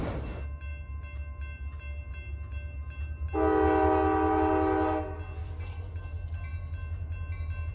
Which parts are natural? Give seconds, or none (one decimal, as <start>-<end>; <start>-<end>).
0.0-5.4; 5.9-7.7